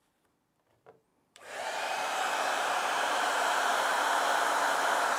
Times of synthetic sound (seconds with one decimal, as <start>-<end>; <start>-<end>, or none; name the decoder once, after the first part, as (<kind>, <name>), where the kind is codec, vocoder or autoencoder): 1.1-4.2 (vocoder, BigVGAN v2)